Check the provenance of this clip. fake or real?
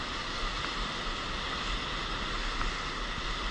real